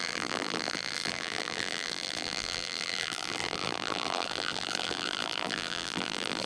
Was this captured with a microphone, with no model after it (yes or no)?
no